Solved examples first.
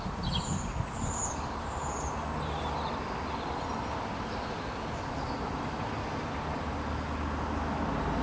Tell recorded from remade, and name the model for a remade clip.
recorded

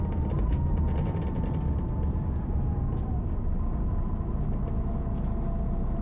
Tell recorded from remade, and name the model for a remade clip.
recorded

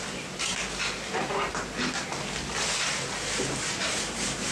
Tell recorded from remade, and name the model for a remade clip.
recorded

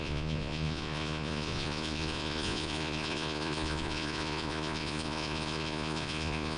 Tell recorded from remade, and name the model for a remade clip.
remade, vocoder, Vocos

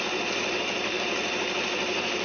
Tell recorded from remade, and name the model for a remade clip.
recorded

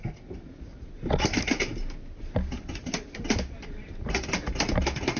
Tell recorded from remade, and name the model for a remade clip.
recorded